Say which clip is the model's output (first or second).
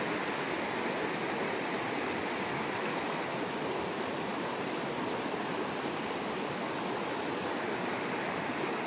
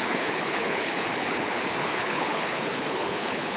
second